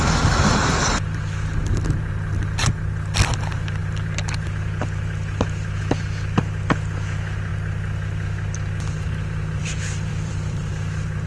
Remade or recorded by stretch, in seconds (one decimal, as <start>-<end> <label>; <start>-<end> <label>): 0.0-10.1 recorded; 10.1-10.7 remade; 10.7-11.3 recorded